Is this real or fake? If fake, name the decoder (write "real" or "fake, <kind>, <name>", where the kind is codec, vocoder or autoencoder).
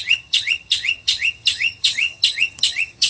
fake, vocoder, HiFi-GAN